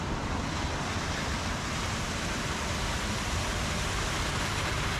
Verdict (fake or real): fake